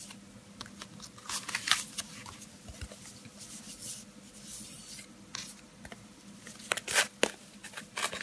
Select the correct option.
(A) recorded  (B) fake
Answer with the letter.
A